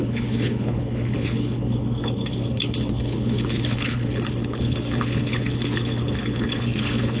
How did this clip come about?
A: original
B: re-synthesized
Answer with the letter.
B